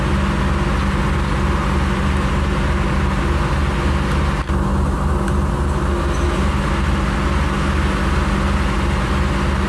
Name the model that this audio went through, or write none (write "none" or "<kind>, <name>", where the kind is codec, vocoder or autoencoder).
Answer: none